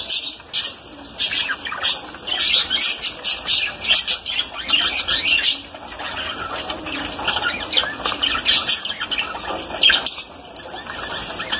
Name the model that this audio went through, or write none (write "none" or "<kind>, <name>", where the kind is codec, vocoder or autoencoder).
none